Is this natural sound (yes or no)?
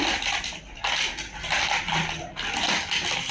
yes